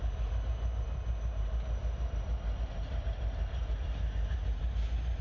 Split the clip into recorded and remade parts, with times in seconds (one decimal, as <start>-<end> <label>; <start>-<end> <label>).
0.0-5.2 remade